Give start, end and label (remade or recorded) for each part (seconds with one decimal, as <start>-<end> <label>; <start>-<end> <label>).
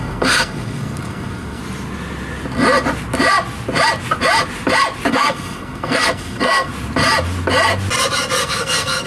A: 0.0-1.6 remade; 1.6-5.1 recorded; 5.1-6.7 remade; 6.7-8.4 recorded; 8.4-9.1 remade